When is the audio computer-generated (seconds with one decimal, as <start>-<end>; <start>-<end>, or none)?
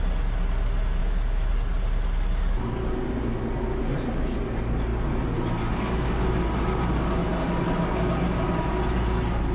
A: 1.0-1.5